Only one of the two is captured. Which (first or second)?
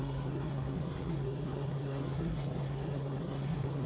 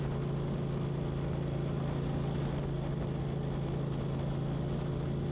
second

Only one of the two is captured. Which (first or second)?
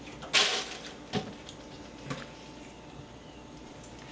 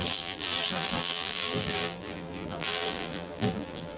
first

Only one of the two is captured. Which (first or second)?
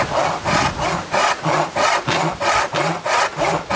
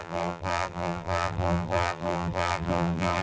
first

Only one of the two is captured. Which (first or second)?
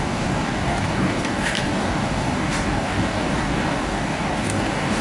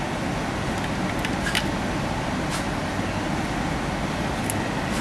second